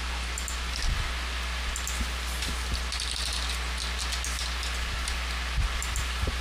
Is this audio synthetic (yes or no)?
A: no